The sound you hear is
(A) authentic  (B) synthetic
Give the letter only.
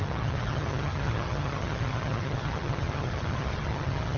B